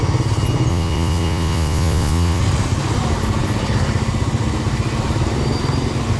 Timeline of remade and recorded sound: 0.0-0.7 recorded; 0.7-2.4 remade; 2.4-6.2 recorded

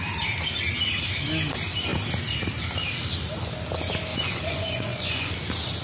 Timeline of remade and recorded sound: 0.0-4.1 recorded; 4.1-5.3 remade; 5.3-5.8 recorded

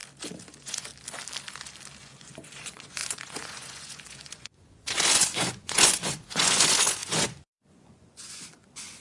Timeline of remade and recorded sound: 0.0-0.5 recorded; 0.5-0.9 remade; 0.9-2.0 recorded; 2.0-9.0 remade

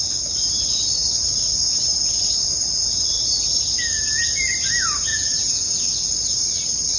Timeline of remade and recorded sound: 0.0-5.1 recorded; 5.1-5.8 remade; 5.8-7.0 recorded

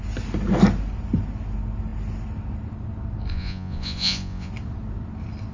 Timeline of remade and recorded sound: 0.0-3.3 recorded; 3.3-4.5 remade; 4.5-5.5 recorded

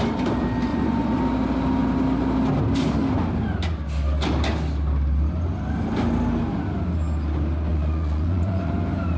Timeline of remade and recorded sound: 0.0-0.7 recorded; 0.7-1.2 remade; 1.2-7.7 recorded; 7.7-8.7 remade; 8.7-9.2 recorded

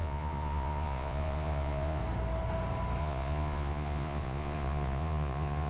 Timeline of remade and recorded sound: 0.0-2.0 remade; 2.0-3.0 recorded; 3.0-5.7 remade

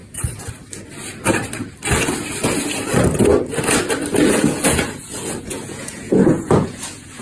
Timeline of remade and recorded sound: 0.0-4.3 recorded; 4.3-7.2 remade